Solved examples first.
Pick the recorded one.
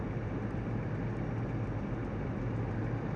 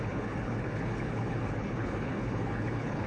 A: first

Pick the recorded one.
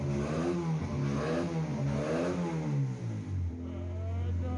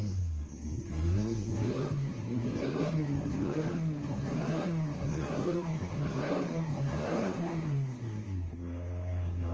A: first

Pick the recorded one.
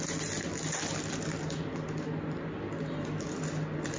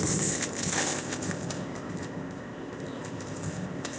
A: first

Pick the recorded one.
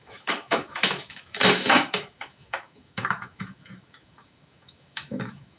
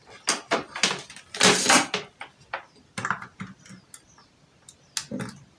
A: second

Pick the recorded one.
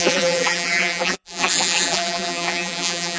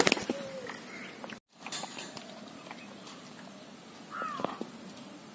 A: second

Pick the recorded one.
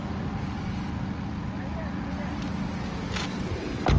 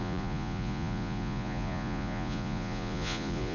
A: first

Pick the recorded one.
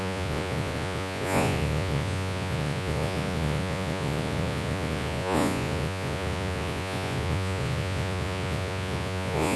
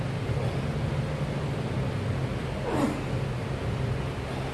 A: second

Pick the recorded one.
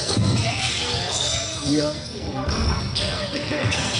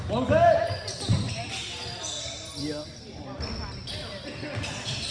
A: second